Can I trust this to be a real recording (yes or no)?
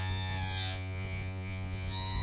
no